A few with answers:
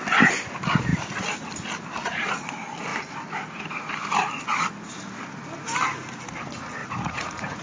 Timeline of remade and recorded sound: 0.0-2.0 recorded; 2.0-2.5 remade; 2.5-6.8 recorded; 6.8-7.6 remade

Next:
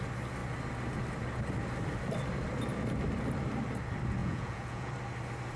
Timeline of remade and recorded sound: 0.0-4.2 recorded; 4.2-4.9 remade; 4.9-5.6 recorded

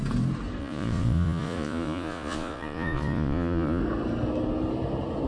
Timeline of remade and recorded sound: 0.0-0.6 recorded; 0.6-3.8 remade; 3.8-5.3 recorded

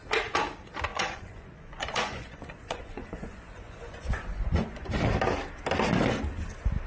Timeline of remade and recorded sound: 0.0-0.9 recorded; 0.9-4.9 remade; 4.9-6.9 recorded

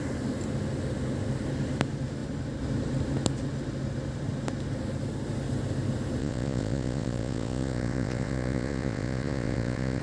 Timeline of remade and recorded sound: 0.0-6.2 recorded; 6.2-10.0 remade

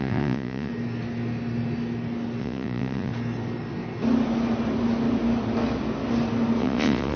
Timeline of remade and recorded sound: 0.0-0.7 remade; 0.7-2.4 recorded; 2.4-3.1 remade; 3.1-6.6 recorded; 6.6-7.2 remade